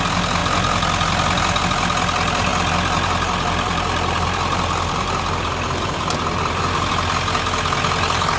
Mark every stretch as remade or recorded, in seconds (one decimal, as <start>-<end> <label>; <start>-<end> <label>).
0.0-2.5 recorded; 2.5-6.9 remade; 6.9-8.4 recorded